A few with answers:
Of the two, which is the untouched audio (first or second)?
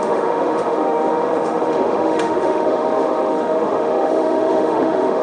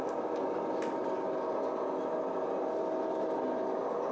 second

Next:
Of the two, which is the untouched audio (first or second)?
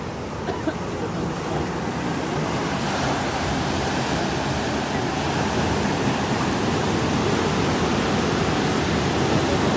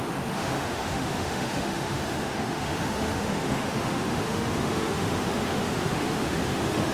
first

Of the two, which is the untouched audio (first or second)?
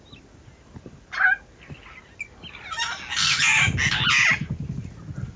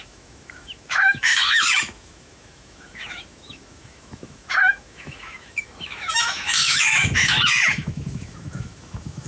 first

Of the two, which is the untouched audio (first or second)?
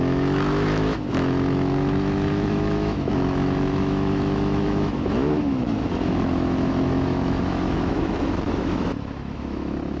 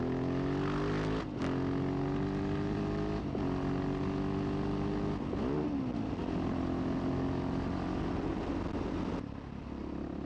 second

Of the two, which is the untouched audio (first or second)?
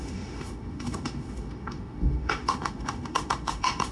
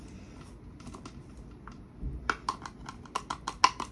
second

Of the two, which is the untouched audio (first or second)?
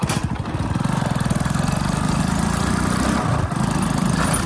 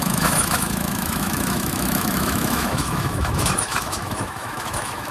first